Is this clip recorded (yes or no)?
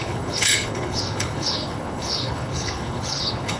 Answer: no